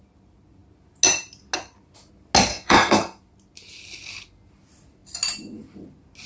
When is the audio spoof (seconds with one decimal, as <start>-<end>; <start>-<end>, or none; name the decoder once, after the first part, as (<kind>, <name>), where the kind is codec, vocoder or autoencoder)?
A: 2.5-3.2 (codec, SNAC)